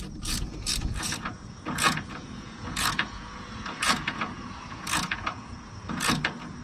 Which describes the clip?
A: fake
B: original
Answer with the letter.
A